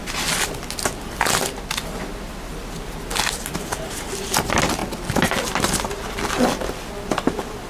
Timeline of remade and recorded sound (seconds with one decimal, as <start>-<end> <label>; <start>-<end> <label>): 0.0-7.7 recorded